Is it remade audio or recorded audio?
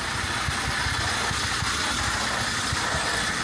recorded